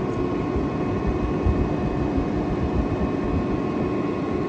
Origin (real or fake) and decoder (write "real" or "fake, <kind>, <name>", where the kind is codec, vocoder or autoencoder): real